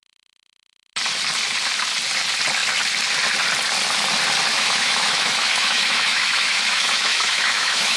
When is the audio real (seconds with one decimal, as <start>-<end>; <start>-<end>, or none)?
0.0-4.5